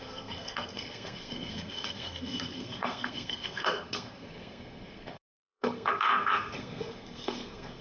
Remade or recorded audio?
remade